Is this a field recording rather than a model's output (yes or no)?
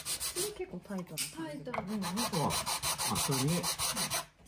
yes